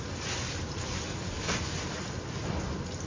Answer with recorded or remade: recorded